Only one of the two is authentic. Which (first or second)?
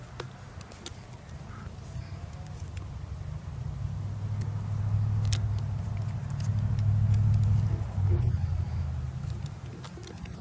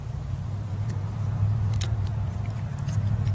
first